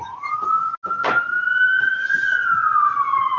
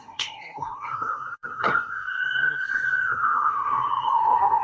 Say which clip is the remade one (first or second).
second